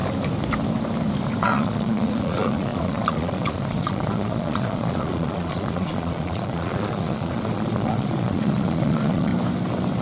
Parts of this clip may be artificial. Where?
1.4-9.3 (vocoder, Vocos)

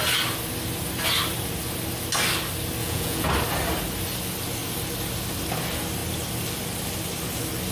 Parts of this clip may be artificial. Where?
2.8-3.3 (vocoder, Vocos)